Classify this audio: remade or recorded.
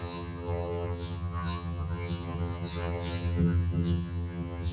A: remade